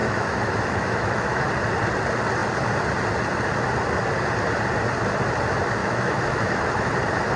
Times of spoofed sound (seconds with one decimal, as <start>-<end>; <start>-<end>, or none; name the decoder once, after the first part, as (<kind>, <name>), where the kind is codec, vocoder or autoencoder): 0.0-1.5 (autoencoder, DAC-VAE); 5.8-6.9